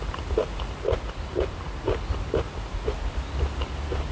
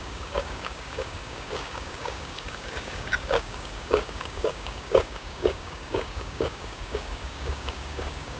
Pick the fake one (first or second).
second